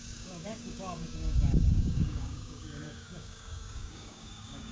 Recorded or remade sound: remade